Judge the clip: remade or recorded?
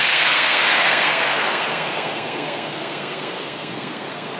remade